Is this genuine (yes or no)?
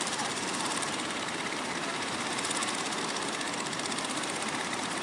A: no